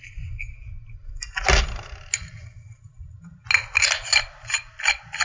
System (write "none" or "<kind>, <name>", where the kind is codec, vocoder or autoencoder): none